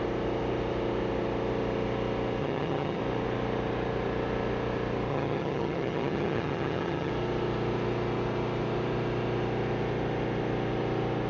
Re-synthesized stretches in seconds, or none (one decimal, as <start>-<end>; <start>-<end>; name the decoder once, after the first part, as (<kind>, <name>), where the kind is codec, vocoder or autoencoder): 2.4-3.0 (vocoder, HiFi-GAN); 5.1-7.1